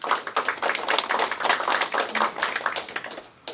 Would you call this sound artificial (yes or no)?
no